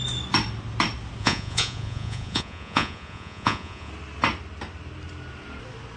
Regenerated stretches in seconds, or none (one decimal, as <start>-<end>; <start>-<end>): 1.2-3.9